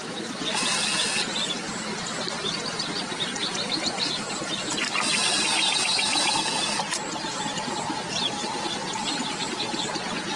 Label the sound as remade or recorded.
recorded